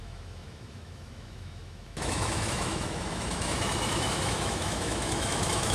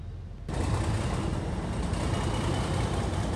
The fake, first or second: first